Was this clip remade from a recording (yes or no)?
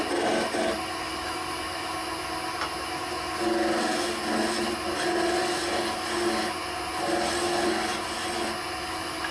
no